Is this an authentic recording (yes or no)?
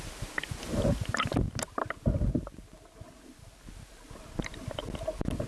yes